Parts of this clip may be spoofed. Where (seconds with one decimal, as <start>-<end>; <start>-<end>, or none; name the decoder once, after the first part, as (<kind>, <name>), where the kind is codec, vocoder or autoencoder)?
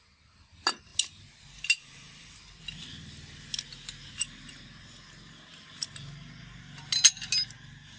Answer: none